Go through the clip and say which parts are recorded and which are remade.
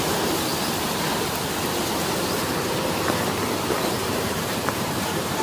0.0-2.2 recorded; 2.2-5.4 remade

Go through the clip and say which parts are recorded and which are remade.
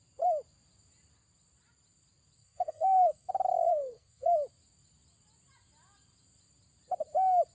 0.0-2.4 recorded; 2.4-3.3 remade; 3.3-3.7 recorded; 3.7-4.3 remade; 4.3-7.5 recorded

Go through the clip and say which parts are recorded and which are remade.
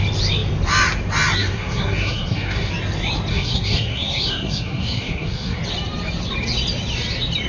0.0-1.4 recorded; 1.4-2.7 remade; 2.7-3.3 recorded; 3.3-5.6 remade; 5.6-7.5 recorded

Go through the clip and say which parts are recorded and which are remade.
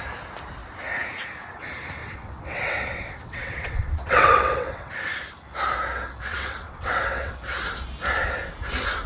0.0-2.0 recorded; 2.0-4.9 remade; 4.9-6.3 recorded; 6.3-7.3 remade; 7.3-9.1 recorded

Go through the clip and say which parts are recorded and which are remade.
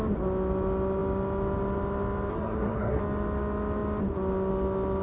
0.0-2.3 recorded; 2.3-3.0 remade; 3.0-5.0 recorded